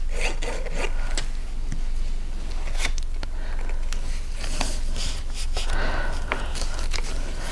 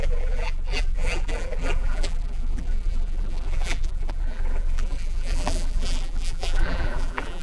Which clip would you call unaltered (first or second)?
first